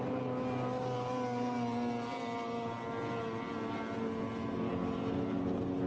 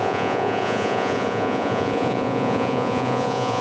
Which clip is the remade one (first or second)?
second